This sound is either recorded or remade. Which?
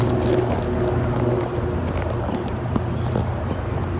recorded